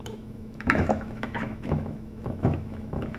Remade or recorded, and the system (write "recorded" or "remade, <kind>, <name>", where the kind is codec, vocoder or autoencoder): remade, autoencoder, DAC-VAE